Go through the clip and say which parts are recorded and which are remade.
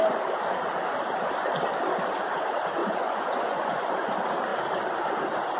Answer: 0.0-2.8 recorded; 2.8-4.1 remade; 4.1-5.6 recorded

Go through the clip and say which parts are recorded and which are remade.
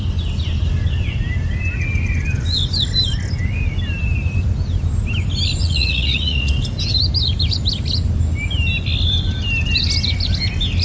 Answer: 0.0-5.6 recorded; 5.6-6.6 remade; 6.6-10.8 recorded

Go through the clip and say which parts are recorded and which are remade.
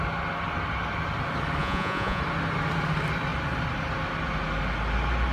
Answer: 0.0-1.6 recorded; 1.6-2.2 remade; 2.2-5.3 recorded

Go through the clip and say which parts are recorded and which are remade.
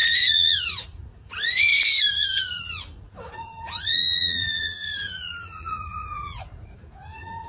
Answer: 0.0-7.5 remade